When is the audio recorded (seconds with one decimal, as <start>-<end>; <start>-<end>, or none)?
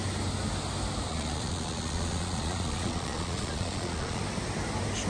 0.0-1.1; 4.2-5.1